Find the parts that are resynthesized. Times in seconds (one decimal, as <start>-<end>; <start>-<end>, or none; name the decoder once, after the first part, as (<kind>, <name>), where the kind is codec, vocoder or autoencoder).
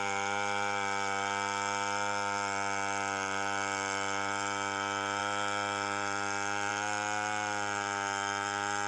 none